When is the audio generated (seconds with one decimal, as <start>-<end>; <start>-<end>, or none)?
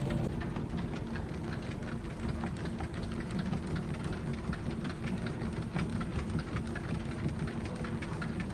4.3-5.5; 5.9-7.1